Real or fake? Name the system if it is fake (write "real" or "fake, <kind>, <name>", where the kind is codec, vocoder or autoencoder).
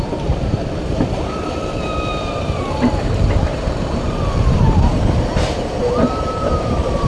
fake, vocoder, BigVGAN v2